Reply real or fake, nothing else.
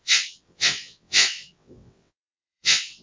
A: fake